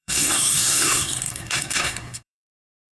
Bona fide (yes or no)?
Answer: no